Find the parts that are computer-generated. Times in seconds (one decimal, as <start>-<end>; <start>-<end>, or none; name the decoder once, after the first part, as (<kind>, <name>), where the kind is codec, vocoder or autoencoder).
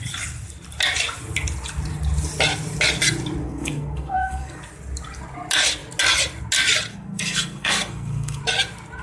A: 3.4-4.6 (codec, SNAC); 6.9-8.4